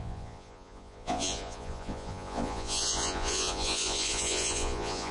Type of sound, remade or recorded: remade